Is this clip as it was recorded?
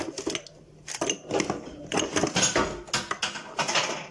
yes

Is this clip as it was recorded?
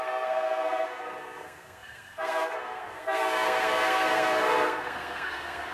no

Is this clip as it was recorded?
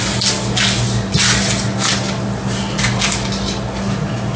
yes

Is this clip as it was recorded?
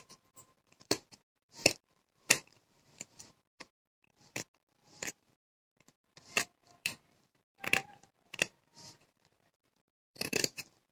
no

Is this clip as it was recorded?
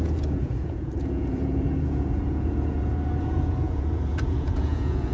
no